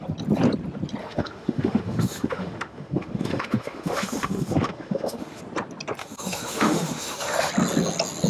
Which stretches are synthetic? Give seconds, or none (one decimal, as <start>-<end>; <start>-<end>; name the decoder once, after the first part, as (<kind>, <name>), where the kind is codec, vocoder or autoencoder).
1.0-5.4 (autoencoder, DAC-VAE); 6.0-7.5